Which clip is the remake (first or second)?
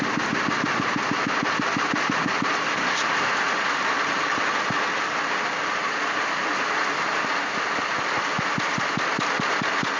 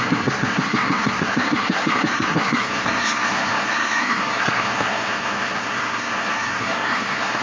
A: second